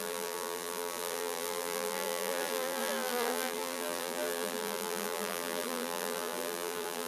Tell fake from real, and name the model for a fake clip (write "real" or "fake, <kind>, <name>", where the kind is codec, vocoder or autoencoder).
fake, vocoder, BigVGAN v2